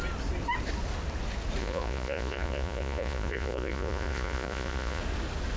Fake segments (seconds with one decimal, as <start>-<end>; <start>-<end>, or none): 1.6-5.0